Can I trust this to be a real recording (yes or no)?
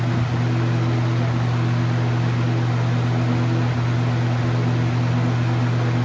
yes